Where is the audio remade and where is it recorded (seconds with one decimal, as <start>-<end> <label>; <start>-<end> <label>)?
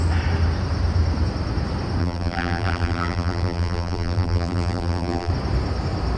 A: 0.0-2.0 recorded; 2.0-5.3 remade; 5.3-6.2 recorded